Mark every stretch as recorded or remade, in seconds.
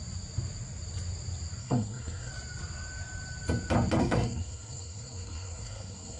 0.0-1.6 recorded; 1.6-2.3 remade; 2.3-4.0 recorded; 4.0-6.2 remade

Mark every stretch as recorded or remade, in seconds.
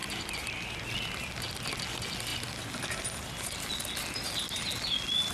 0.0-5.3 recorded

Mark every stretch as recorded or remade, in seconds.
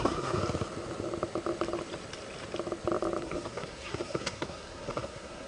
0.0-0.4 remade; 0.4-3.2 recorded; 3.2-5.5 remade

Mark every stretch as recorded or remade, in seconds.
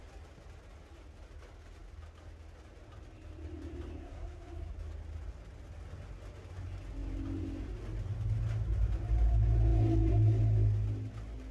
0.0-4.0 recorded; 4.0-4.7 remade; 4.7-11.5 recorded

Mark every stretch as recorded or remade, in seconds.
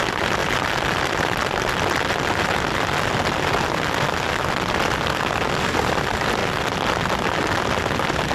0.0-8.3 recorded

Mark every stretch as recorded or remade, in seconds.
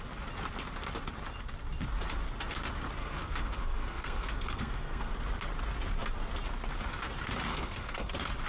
0.0-3.0 recorded; 3.0-5.1 remade; 5.1-7.5 recorded; 7.5-8.1 remade; 8.1-8.5 recorded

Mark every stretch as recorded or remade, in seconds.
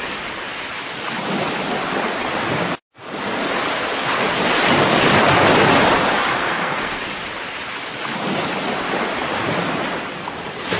0.0-6.3 recorded; 6.3-7.0 remade; 7.0-10.8 recorded